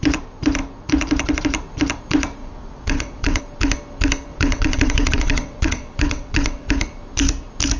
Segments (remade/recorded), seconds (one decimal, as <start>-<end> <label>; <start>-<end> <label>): 0.0-2.4 recorded; 2.4-3.4 remade; 3.4-4.3 recorded; 4.3-6.7 remade; 6.7-7.8 recorded